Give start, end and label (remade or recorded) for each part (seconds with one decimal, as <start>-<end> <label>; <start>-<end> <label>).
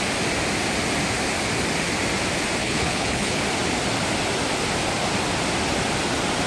0.0-2.6 recorded; 2.6-3.4 remade; 3.4-6.5 recorded